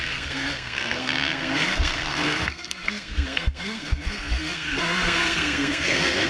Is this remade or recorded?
remade